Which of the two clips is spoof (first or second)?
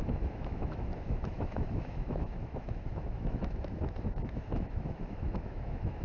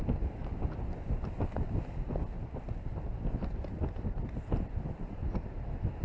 first